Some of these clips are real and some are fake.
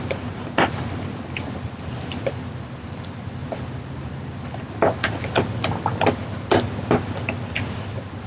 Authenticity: real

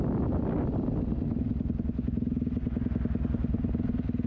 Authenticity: real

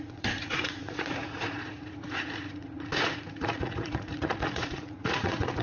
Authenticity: fake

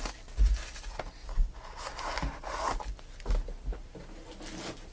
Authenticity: real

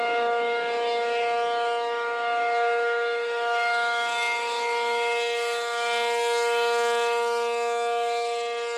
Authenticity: fake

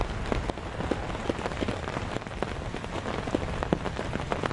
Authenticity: real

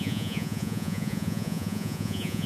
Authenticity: fake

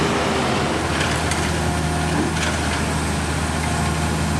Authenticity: real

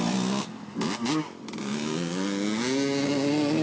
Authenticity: real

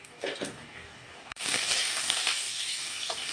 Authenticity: fake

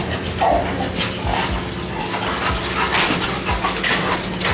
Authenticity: real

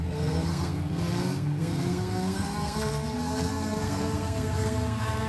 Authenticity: fake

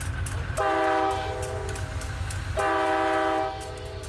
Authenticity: real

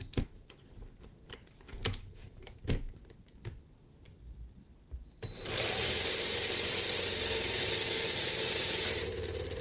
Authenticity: fake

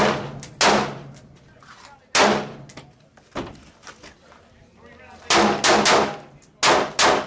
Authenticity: real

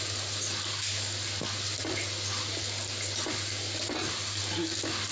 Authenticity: real